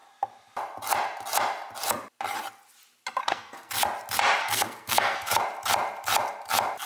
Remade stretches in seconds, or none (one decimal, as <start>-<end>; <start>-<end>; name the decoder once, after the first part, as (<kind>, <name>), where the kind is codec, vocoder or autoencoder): 3.2-3.7 (codec, SNAC); 4.4-5.4